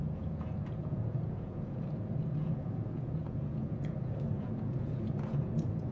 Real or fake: fake